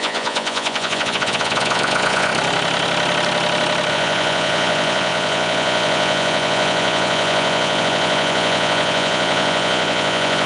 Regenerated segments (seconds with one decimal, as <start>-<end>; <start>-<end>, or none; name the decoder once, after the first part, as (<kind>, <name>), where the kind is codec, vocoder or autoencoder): 0.0-2.3 (vocoder, Vocos); 3.9-10.5